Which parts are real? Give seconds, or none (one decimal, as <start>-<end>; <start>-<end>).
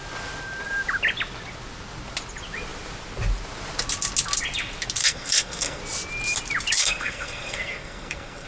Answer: 0.0-5.0; 5.8-6.8